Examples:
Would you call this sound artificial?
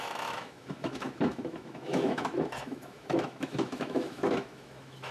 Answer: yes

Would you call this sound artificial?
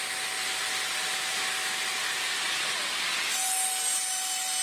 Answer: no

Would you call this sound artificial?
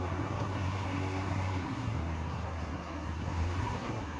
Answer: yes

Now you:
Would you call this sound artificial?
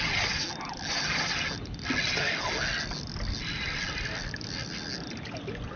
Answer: no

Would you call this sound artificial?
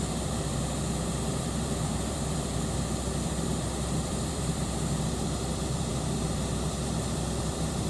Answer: yes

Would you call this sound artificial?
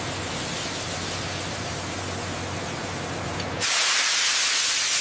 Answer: no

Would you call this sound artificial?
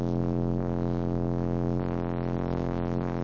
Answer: yes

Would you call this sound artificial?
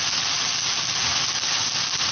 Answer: no